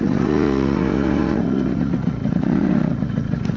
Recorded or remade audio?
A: remade